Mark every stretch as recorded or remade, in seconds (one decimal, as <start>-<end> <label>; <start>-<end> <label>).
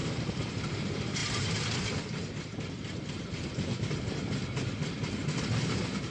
0.0-0.6 remade; 0.6-6.1 recorded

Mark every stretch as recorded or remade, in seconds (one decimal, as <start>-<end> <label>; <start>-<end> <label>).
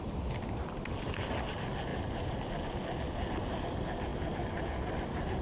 0.0-5.4 recorded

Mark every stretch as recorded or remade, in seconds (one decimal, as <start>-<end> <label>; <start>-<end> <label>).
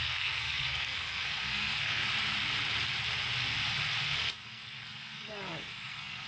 0.0-2.0 remade; 2.0-4.0 recorded; 4.0-6.3 remade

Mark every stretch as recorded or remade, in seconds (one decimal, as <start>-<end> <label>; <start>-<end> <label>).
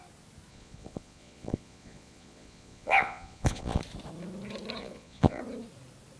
0.0-0.5 recorded; 0.5-3.8 remade; 3.8-4.8 recorded; 4.8-5.4 remade; 5.4-6.2 recorded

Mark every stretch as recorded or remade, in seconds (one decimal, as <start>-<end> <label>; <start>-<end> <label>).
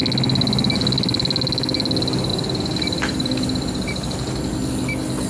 0.0-2.3 recorded; 2.3-4.7 remade; 4.7-5.3 recorded